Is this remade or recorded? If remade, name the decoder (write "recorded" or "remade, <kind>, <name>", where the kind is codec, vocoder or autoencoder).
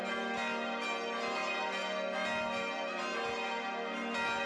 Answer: recorded